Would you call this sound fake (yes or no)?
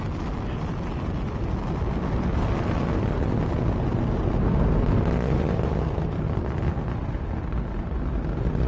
no